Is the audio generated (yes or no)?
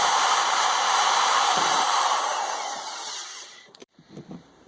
yes